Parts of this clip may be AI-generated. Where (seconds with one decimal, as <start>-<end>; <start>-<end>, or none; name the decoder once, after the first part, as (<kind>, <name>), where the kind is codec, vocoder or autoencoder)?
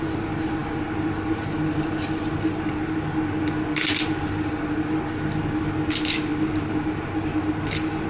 none